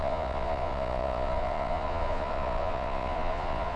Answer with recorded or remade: remade